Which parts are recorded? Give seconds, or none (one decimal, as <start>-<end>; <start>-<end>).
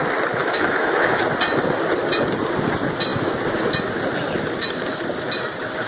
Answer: 0.0-0.4; 1.2-5.9